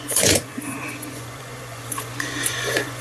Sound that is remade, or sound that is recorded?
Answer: remade